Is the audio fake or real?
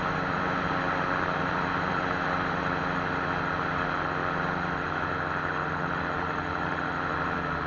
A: real